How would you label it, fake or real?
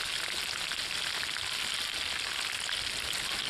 real